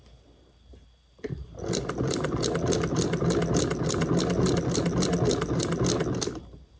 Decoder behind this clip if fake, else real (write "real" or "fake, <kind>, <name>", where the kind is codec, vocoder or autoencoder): real